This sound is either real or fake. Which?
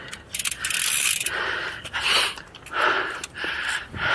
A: real